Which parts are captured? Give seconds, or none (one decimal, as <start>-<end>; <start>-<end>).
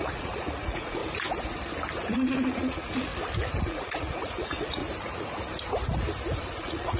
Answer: 1.0-2.1; 3.1-3.6; 4.8-6.6